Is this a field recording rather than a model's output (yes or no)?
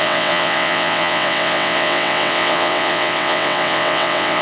no